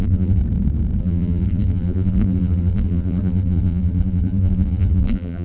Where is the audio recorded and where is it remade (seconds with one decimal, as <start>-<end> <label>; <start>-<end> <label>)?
0.0-0.4 remade; 0.4-1.0 recorded; 1.0-5.4 remade